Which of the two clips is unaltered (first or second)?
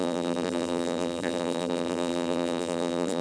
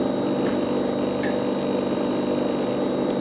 second